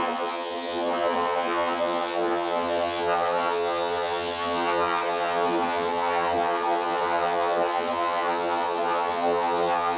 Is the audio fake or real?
fake